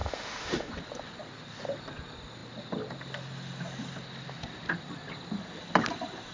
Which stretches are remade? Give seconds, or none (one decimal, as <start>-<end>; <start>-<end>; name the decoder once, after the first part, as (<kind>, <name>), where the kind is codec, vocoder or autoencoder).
0.0-0.7 (autoencoder, DAC-VAE)